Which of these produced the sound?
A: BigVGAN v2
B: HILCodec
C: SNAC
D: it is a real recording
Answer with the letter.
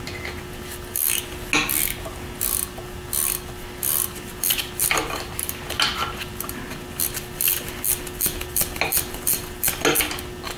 D